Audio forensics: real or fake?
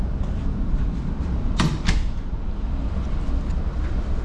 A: real